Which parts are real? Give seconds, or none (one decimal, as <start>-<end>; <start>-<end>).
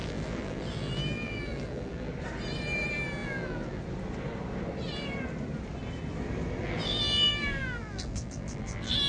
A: 2.1-3.2; 3.8-6.6